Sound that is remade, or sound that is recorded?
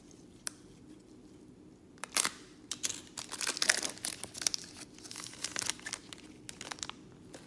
recorded